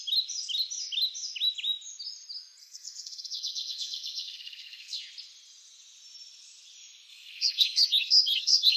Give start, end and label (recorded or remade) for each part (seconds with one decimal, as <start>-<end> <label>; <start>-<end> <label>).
0.0-2.6 recorded; 2.6-5.0 remade; 5.0-7.1 recorded; 7.1-8.8 remade